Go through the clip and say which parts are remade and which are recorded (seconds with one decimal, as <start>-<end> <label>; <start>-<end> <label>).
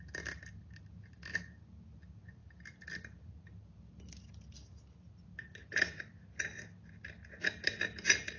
0.0-8.4 recorded